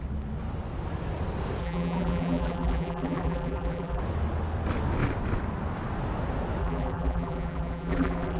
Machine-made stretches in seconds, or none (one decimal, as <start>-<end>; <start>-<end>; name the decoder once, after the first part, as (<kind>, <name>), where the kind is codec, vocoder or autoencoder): 1.6-4.0 (vocoder, BigVGAN v2); 6.6-8.4